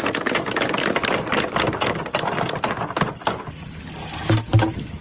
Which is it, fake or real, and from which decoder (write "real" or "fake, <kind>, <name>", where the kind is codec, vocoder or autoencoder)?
real